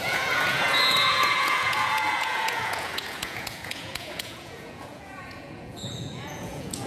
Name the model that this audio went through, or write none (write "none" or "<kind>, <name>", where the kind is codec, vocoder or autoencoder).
vocoder, Vocos